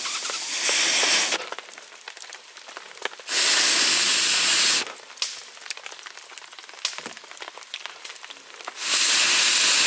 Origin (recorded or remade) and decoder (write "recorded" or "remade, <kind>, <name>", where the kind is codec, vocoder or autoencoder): recorded